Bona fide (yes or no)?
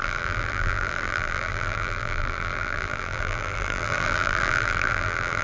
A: no